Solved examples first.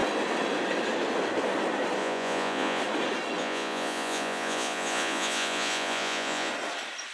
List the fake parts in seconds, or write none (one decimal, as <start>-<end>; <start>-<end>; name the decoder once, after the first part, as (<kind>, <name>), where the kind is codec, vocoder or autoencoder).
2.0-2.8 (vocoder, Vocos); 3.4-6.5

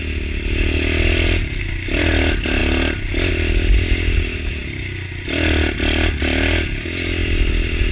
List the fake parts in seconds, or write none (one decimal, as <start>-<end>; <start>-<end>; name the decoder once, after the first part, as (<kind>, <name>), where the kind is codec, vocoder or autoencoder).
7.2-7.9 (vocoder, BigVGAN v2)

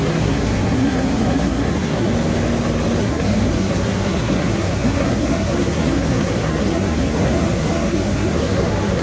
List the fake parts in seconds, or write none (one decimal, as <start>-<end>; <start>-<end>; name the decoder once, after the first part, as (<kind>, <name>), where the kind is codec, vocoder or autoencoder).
0.0-2.1 (codec, SNAC); 3.0-9.0